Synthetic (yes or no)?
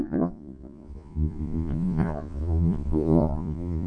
yes